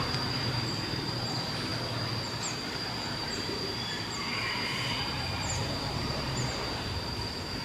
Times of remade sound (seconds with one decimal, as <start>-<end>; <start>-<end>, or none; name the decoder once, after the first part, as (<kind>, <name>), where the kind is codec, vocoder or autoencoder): 0.0-1.7 (vocoder, BigVGAN v2); 2.2-7.6